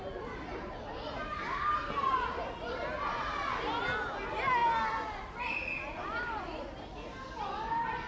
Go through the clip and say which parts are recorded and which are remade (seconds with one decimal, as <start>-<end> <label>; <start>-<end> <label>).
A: 0.0-8.1 recorded